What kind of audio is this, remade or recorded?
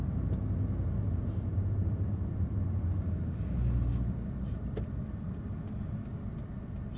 recorded